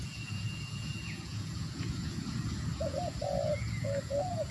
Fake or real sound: fake